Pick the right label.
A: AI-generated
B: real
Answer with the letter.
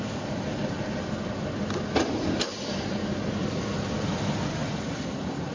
B